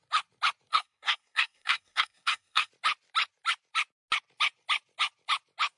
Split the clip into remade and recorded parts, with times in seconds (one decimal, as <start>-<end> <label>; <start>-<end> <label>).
0.0-0.7 recorded; 0.7-2.7 remade; 2.7-5.8 recorded